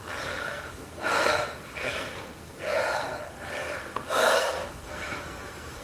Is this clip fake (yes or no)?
yes